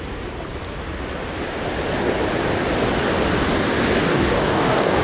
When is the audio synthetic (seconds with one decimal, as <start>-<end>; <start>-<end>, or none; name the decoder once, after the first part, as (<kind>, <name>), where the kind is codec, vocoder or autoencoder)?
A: 4.1-5.0 (codec, DAC)